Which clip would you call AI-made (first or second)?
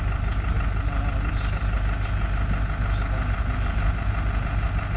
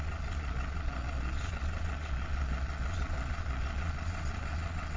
second